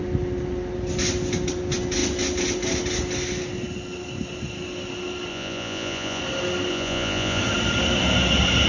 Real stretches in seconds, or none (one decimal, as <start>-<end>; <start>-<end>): 0.0-5.3; 6.2-6.7; 7.4-8.7